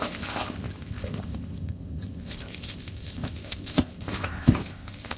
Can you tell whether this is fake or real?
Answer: fake